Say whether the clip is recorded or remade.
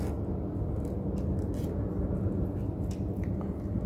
recorded